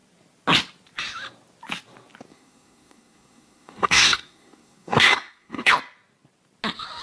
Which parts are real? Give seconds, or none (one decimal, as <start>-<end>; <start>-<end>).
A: 0.0-2.3; 5.7-7.0